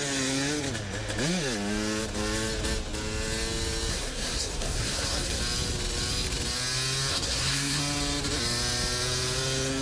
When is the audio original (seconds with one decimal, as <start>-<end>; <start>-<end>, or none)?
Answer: 0.0-3.9; 5.4-7.1; 7.8-9.8